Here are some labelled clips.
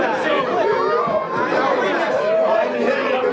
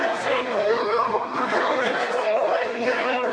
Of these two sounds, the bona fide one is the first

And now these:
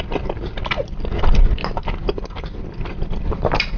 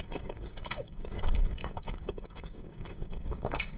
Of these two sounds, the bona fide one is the first